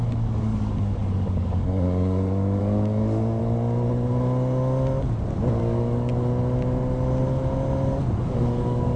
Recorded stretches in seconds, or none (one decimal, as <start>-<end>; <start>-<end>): 3.4-5.6; 6.1-8.2